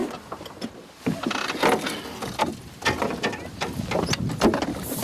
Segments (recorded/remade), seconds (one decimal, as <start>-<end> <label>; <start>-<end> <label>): 0.0-5.0 recorded